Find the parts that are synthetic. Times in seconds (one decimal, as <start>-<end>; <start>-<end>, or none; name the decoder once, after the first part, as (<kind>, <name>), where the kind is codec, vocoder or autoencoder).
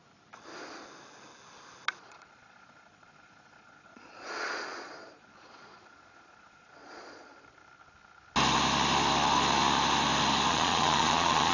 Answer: 2.0-7.3 (vocoder, Vocos); 10.5-11.5